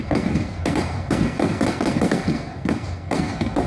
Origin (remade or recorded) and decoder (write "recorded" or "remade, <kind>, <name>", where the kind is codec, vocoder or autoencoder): remade, codec, SNAC